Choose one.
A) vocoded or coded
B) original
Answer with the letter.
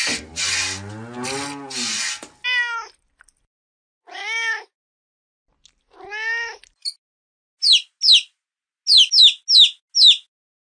B